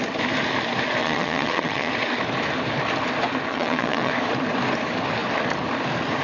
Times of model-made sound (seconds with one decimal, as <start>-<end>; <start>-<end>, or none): 1.0-1.9; 3.5-4.1